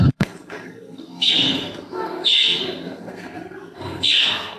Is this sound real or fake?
fake